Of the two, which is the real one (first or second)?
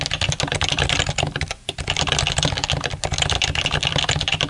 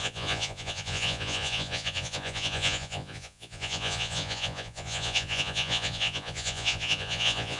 first